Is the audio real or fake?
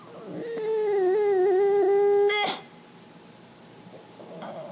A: real